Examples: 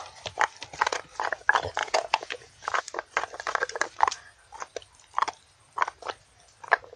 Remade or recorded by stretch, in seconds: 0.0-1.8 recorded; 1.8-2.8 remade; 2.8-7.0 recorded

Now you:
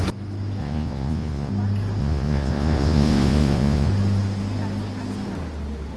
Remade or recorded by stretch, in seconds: 0.0-0.6 recorded; 0.6-1.5 remade; 1.5-2.0 recorded; 2.0-3.9 remade; 3.9-6.0 recorded

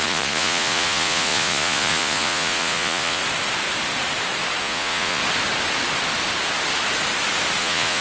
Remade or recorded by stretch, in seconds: 0.0-3.2 remade; 3.2-4.6 recorded; 4.6-5.2 remade; 5.2-7.6 recorded; 7.6-8.0 remade

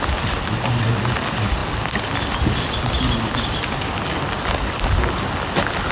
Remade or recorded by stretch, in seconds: 0.0-5.9 recorded

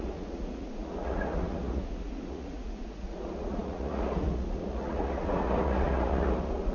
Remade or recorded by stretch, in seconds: 0.0-6.7 remade

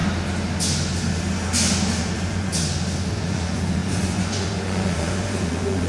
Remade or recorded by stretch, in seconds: 0.0-2.0 recorded; 2.0-2.5 remade; 2.5-3.1 recorded; 3.1-5.9 remade